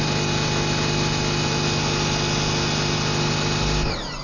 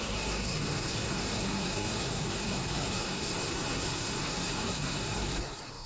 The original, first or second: first